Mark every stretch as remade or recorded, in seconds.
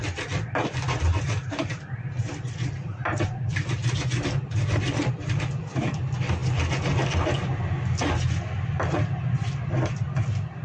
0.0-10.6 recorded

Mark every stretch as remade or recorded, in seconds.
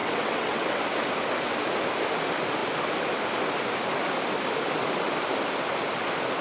0.0-0.8 remade; 0.8-6.4 recorded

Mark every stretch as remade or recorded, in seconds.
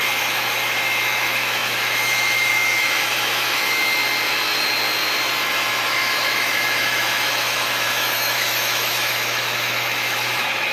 0.0-4.0 remade; 4.0-5.8 recorded; 5.8-10.7 remade